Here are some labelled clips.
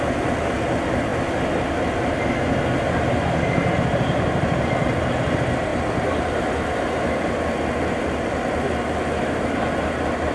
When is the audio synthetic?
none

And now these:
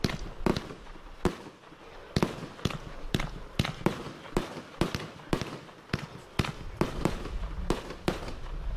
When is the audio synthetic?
none

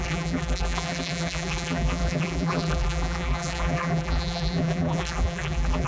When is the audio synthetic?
0.0-5.9

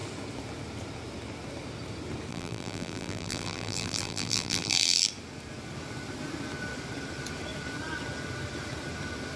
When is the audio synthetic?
2.3-5.1